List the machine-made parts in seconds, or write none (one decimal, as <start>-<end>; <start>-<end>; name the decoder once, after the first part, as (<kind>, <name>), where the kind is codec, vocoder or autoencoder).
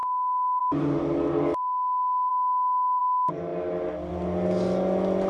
0.0-0.6 (codec, DAC)